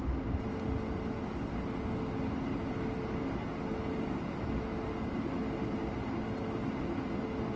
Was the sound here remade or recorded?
recorded